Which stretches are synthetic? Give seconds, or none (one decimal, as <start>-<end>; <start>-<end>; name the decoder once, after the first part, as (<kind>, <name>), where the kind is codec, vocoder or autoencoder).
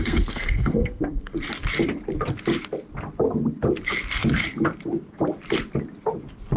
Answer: 0.0-1.4 (codec, SNAC)